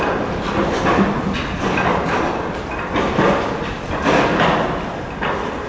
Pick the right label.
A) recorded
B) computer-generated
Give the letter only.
A